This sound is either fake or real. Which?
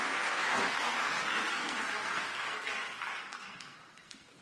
fake